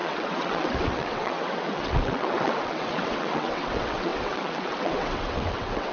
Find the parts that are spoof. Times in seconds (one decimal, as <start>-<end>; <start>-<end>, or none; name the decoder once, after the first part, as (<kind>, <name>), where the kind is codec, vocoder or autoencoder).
0.0-5.9 (vocoder, WaveNeXt)